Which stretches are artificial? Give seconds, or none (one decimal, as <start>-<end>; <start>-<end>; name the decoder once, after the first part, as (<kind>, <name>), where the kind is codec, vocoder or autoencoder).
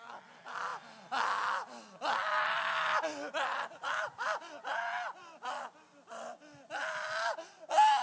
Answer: none